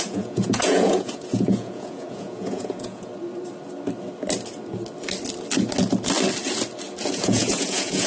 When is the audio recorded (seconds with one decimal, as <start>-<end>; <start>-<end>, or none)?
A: 3.1-7.1